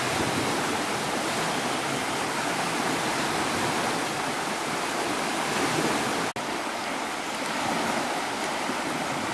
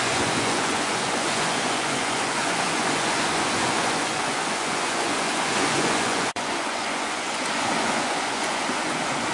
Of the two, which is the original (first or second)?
first